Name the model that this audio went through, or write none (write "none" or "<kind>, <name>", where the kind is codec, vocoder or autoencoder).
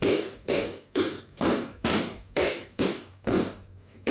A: codec, DAC